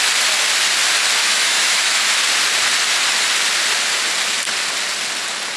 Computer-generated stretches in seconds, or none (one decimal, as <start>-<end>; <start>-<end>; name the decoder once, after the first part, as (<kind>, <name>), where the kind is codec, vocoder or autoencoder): 1.2-2.2 (autoencoder, DAC-VAE)